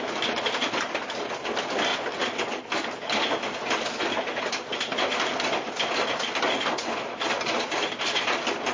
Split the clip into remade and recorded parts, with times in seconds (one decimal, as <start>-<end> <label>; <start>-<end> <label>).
0.0-8.7 recorded

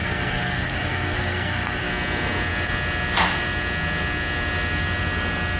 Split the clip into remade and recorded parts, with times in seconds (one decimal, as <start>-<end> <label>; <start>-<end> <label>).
0.0-1.9 remade; 1.9-5.6 recorded